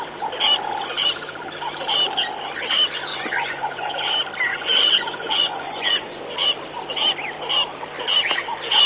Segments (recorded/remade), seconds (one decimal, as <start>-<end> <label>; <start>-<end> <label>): 0.0-3.1 recorded; 3.1-3.9 remade; 3.9-4.5 recorded; 4.5-6.2 remade; 6.2-8.9 recorded